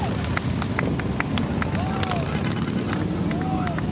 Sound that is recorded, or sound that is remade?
recorded